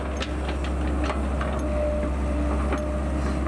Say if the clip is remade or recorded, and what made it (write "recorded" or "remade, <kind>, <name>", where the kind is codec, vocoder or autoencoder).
recorded